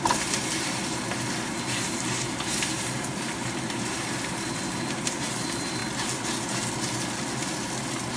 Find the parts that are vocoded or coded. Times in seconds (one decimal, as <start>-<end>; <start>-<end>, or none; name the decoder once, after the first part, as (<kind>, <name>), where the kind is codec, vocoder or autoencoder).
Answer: 0.0-5.8 (vocoder, BigVGAN v2)